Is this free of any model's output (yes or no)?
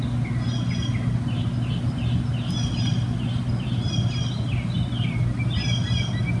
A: yes